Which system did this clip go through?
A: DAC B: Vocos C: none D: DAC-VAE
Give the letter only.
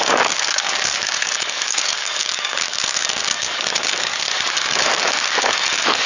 A